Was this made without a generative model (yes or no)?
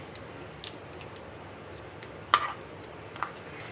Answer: yes